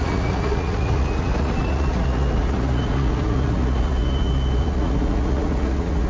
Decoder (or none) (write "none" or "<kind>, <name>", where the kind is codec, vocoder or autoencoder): vocoder, Vocos